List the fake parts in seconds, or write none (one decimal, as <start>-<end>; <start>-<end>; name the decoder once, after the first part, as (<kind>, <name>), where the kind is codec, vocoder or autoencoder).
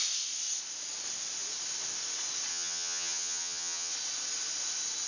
2.5-3.9 (vocoder, HiFi-GAN)